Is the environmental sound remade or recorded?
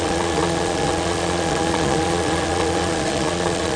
remade